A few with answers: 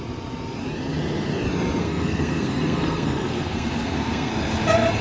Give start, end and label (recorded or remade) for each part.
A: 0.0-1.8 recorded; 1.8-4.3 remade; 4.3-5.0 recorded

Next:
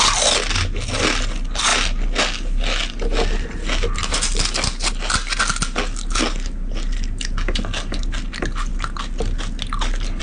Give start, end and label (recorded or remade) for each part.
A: 0.0-10.2 recorded

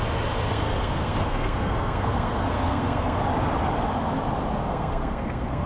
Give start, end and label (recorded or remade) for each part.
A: 0.0-0.5 recorded; 0.5-3.2 remade; 3.2-4.6 recorded; 4.6-5.7 remade

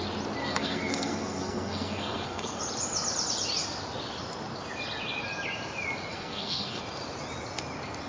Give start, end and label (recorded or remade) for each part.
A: 0.0-0.4 recorded; 0.4-2.6 remade; 2.6-6.1 recorded; 6.1-6.8 remade; 6.8-8.1 recorded